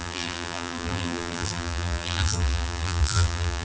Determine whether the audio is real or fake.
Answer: fake